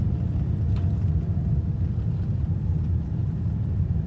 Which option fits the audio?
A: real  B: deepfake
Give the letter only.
A